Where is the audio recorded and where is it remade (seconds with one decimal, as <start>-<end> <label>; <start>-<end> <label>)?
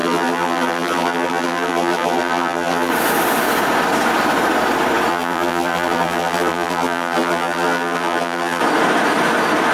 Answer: 0.0-2.9 remade; 2.9-5.1 recorded; 5.1-8.6 remade; 8.6-9.7 recorded